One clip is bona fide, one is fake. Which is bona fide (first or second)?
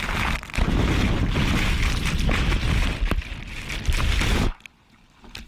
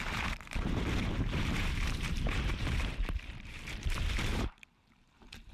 first